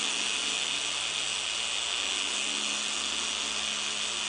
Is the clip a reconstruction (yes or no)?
no